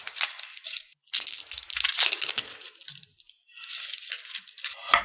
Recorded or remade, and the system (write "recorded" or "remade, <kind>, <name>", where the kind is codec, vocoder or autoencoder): recorded